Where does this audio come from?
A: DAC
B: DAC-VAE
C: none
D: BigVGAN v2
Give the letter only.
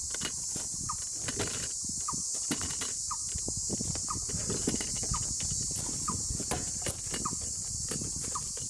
C